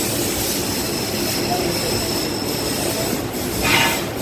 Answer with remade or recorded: recorded